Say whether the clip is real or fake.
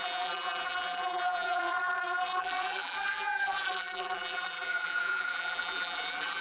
fake